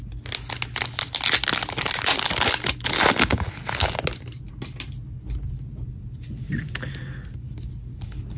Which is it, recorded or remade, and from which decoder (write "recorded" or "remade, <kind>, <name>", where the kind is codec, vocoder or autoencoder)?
recorded